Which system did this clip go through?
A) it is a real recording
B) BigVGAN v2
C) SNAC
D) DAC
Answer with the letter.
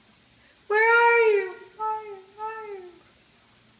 A